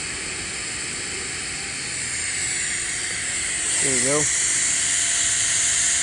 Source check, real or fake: real